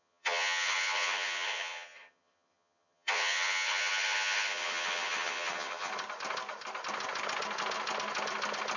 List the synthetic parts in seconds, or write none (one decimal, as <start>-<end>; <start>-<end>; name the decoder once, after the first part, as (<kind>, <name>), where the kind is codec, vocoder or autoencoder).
0.0-5.9 (vocoder, HiFi-GAN)